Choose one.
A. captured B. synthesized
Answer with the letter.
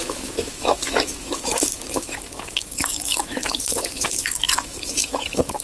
B